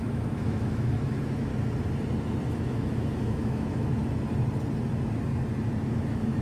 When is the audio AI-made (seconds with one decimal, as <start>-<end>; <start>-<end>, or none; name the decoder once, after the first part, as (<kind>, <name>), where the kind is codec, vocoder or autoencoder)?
0.0-1.5 (autoencoder, DAC-VAE); 2.5-4.0; 5.8-6.4